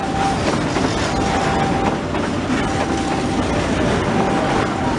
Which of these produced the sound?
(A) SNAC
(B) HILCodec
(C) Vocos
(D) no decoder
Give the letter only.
D